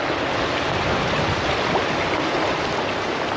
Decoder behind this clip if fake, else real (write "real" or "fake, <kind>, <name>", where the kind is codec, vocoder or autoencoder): real